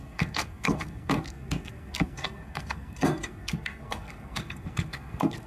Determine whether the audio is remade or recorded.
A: remade